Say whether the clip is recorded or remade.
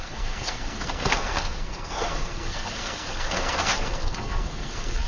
remade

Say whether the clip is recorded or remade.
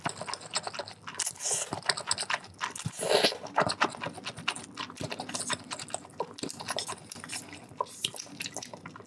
recorded